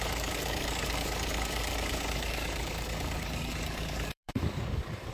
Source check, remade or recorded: remade